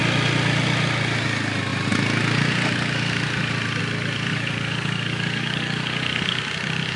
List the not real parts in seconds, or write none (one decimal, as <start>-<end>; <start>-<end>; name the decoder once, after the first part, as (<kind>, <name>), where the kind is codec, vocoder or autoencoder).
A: 4.3-6.4 (codec, DAC)